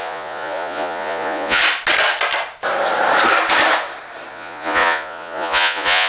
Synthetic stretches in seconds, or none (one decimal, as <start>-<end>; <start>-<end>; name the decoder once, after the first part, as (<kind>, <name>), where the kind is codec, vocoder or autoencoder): 0.0-1.6 (vocoder, Vocos); 4.3-6.1